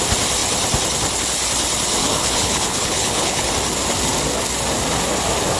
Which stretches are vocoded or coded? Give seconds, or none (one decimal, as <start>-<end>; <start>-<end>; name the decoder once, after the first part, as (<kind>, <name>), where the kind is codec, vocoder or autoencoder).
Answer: 2.0-3.5 (codec, HILCodec)